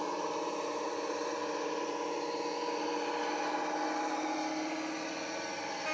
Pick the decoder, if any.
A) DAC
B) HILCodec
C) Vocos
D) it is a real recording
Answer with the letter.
D